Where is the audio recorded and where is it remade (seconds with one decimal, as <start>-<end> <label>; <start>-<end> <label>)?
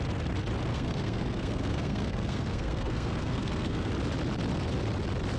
0.0-0.7 recorded; 0.7-3.9 remade; 3.9-5.4 recorded